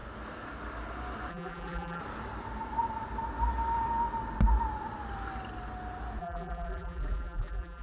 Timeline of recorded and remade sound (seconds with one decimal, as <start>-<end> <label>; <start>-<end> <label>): 0.0-1.3 recorded; 1.3-2.0 remade; 2.0-6.2 recorded; 6.2-7.8 remade